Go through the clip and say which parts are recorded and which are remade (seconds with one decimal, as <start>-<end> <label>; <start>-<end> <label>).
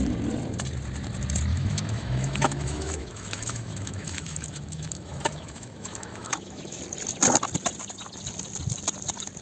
0.0-1.5 recorded; 1.5-6.8 remade; 6.8-9.4 recorded